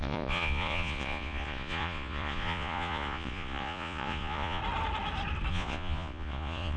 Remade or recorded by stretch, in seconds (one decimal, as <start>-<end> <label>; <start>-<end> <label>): 0.0-4.6 remade; 4.6-5.5 recorded; 5.5-6.8 remade